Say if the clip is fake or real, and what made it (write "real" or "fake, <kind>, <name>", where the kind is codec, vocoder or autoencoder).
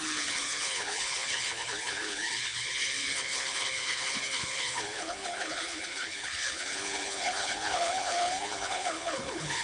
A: fake, codec, HILCodec